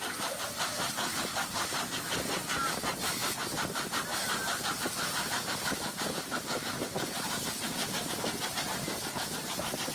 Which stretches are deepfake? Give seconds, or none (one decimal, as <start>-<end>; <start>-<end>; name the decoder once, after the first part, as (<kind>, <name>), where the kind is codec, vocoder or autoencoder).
4.1-5.1 (vocoder, BigVGAN v2)